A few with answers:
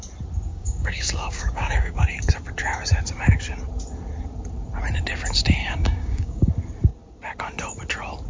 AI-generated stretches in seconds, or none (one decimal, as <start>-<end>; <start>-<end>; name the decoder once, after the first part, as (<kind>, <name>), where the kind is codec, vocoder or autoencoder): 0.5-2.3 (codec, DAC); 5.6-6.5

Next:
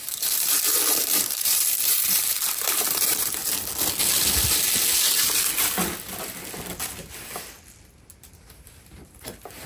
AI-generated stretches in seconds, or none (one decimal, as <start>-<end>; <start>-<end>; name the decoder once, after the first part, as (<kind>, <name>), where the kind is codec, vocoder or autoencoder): 0.0-3.4 (vocoder, BigVGAN v2); 8.5-9.7

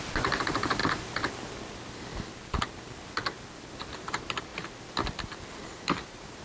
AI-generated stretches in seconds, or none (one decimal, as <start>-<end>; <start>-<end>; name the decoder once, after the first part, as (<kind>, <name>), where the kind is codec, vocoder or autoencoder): 0.0-0.8 (vocoder, BigVGAN v2); 4.1-4.5; 5.8-6.4

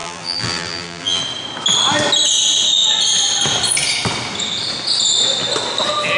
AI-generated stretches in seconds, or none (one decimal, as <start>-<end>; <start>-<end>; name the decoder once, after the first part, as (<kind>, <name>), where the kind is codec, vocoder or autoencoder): 0.0-1.2 (vocoder, BigVGAN v2)

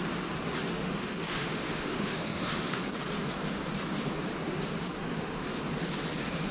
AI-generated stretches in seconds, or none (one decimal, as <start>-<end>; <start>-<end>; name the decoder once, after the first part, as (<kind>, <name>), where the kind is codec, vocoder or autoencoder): 0.8-2.8 (autoencoder, DAC-VAE); 5.0-5.6

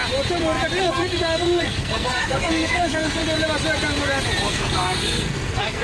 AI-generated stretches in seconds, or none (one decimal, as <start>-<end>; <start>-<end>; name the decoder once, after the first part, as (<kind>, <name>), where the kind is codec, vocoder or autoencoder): 0.8-3.2 (codec, SNAC); 4.5-5.8

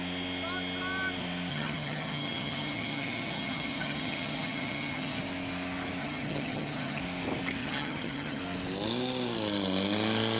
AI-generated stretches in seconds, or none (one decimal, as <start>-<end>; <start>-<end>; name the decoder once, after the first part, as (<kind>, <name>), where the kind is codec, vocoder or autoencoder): 1.5-5.2 (vocoder, HiFi-GAN); 6.0-7.0; 7.6-8.4